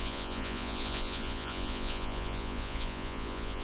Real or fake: fake